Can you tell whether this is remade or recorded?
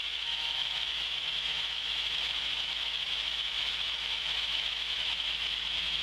remade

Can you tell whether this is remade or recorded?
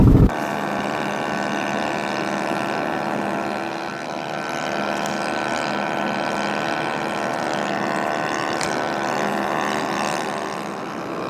recorded